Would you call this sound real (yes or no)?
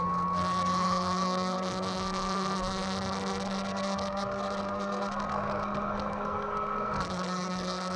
no